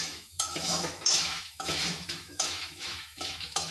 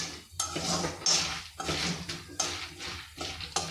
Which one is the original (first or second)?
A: second